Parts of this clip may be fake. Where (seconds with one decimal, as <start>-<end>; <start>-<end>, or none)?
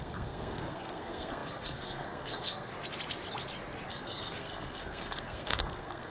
0.0-2.7; 3.9-6.1